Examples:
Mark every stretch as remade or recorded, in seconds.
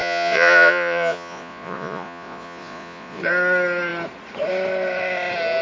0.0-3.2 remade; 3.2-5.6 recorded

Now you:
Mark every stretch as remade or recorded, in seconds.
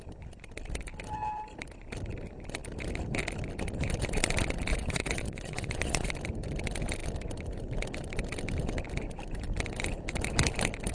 0.0-4.7 recorded; 4.7-6.1 remade; 6.1-10.9 recorded